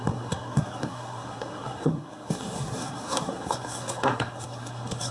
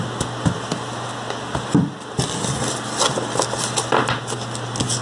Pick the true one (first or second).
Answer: second